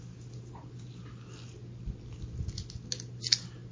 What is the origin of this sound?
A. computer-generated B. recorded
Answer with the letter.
B